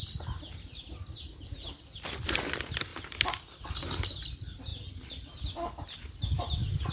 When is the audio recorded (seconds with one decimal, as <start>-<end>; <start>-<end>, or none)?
2.9-3.5; 4.7-6.4